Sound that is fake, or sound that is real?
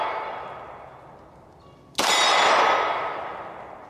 real